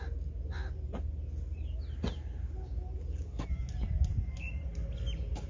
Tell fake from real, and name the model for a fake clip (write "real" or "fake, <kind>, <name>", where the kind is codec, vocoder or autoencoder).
real